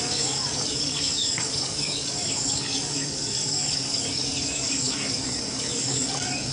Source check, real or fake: fake